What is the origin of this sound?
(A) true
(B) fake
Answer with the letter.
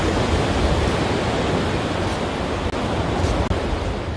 A